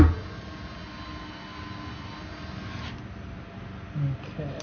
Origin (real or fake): real